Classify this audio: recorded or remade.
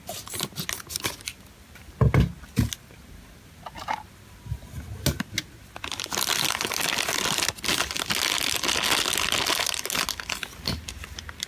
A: recorded